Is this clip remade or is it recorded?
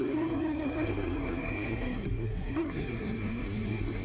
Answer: remade